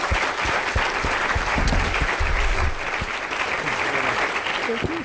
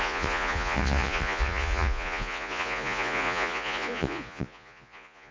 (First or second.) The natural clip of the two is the first